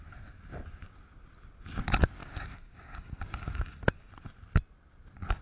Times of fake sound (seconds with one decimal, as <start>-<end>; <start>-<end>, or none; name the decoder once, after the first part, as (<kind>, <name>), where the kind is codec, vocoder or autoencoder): 2.2-4.1 (codec, DAC)